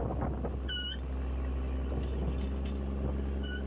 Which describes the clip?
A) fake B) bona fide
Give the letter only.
B